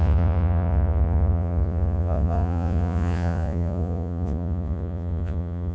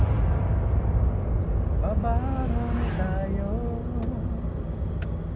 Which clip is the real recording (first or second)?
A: second